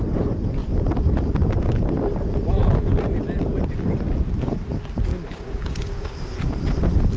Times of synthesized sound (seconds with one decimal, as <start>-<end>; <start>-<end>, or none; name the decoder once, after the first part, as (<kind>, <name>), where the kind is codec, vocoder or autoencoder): 5.1-6.2 (codec, DAC)